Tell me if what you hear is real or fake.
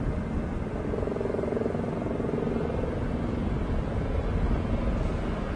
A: real